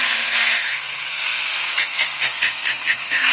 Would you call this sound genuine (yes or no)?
no